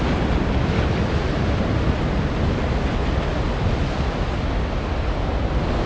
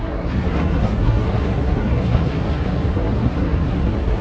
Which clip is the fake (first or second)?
second